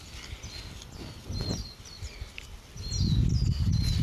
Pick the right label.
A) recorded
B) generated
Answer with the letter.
A